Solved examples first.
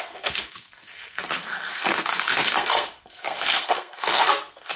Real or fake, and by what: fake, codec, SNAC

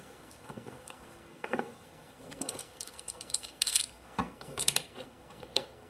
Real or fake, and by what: fake, codec, SNAC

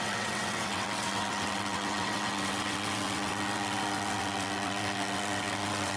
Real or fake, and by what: fake, vocoder, WaveNeXt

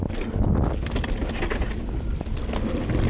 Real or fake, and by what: real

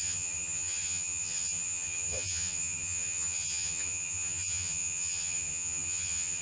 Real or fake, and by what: fake, vocoder, HiFi-GAN